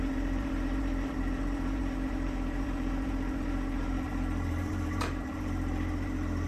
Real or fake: fake